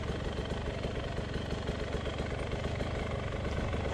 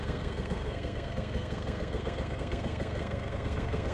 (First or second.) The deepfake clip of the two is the second